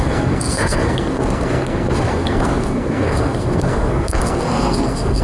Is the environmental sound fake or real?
fake